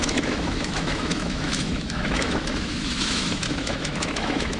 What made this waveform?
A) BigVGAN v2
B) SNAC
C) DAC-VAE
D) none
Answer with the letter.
C